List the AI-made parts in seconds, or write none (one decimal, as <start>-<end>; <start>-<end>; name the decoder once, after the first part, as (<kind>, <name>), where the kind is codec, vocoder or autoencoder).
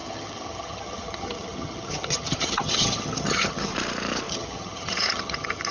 0.0-3.7 (vocoder, HiFi-GAN); 4.3-5.7